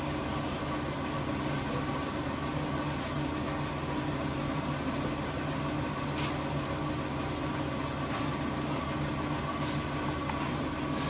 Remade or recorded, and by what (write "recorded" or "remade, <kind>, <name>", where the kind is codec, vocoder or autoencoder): recorded